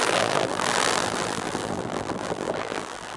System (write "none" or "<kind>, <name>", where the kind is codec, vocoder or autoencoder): vocoder, BigVGAN v2